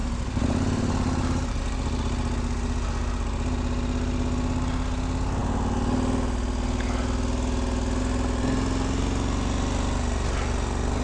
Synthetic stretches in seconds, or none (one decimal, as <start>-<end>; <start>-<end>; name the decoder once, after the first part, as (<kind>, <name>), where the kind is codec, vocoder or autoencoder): 0.0-1.6 (vocoder, BigVGAN v2)